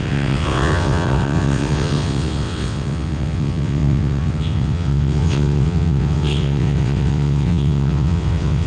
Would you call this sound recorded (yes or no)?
no